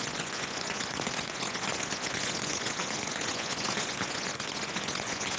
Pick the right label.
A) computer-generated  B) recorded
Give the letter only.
A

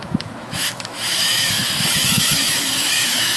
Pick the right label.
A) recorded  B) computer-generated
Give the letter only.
B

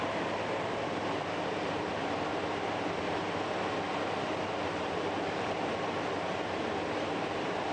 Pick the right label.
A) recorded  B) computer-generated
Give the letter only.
B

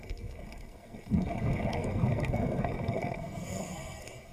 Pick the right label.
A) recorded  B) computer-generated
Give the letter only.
B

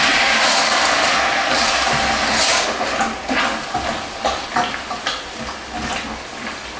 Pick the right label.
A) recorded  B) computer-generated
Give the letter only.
A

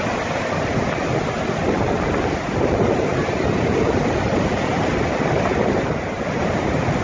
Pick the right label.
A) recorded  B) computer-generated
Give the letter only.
A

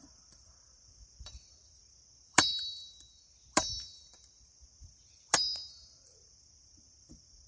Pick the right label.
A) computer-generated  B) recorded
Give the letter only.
A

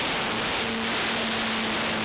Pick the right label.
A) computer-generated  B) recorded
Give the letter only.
B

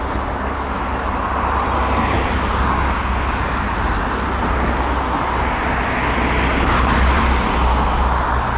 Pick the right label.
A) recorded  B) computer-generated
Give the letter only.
A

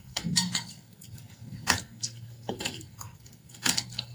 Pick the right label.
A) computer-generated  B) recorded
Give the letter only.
A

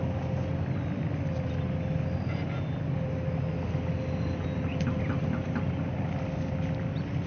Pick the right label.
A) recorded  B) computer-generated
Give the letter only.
A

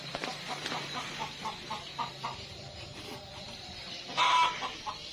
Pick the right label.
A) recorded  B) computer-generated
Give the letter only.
B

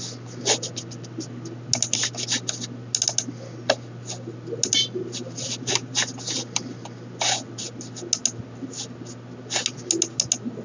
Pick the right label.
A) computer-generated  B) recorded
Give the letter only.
B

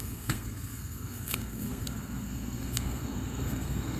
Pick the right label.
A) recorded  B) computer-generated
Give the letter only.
B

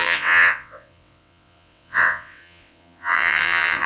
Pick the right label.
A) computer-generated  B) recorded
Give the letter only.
A